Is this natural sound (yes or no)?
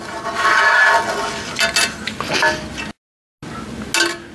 yes